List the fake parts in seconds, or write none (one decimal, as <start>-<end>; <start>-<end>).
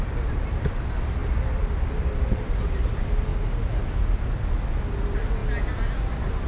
0.0-1.2; 1.9-3.3; 4.0-5.4; 6.1-6.5